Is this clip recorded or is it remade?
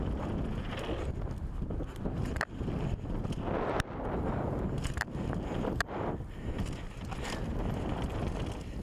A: recorded